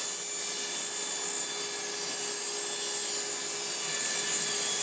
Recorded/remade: recorded